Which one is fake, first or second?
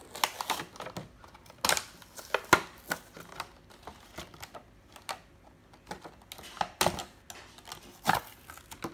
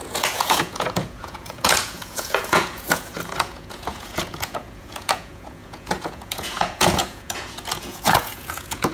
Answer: second